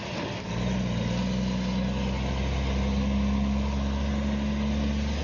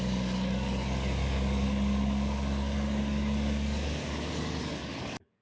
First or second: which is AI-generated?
second